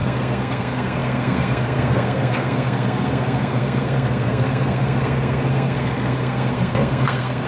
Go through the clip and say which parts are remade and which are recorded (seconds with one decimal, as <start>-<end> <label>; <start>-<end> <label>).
0.0-7.5 remade

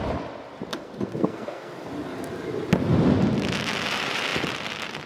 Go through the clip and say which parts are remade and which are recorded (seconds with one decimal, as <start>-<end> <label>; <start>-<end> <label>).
0.0-0.7 recorded; 0.7-1.9 remade; 1.9-5.1 recorded